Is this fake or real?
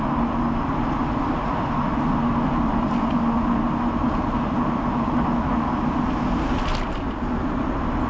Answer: real